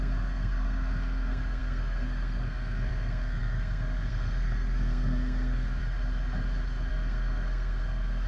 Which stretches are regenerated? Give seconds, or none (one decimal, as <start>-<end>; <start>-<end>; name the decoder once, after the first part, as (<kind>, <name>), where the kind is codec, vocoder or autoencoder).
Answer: 0.0-5.8 (codec, SNAC); 6.9-8.3